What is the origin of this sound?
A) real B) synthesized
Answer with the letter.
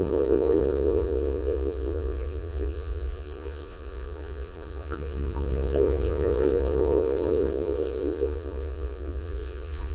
B